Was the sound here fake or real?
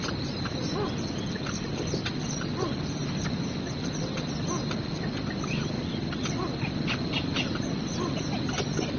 real